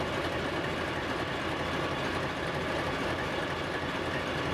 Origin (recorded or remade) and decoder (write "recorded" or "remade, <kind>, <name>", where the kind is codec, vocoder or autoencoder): recorded